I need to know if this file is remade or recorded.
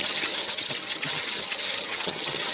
remade